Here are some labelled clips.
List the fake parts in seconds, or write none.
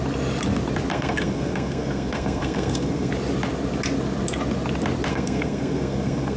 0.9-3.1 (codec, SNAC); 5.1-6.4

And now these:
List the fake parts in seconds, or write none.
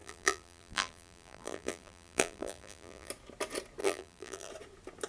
0.0-3.1 (vocoder, BigVGAN v2); 3.8-4.5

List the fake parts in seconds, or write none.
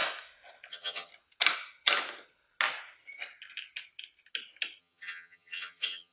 0.7-1.1 (vocoder, HiFi-GAN); 4.8-6.1